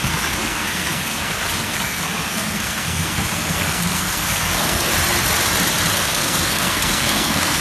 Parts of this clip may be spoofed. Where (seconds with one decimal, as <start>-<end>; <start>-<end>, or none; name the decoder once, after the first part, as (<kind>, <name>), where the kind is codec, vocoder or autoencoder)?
0.0-4.9 (codec, SNAC); 5.9-7.6